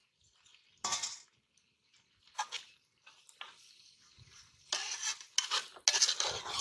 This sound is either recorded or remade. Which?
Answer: recorded